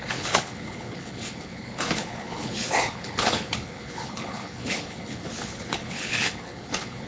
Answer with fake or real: fake